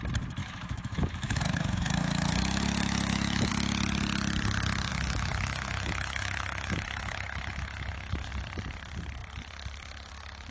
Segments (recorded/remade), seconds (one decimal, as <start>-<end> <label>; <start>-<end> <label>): 0.0-0.4 recorded; 0.4-3.5 remade; 3.5-4.9 recorded; 4.9-8.3 remade; 8.3-10.5 recorded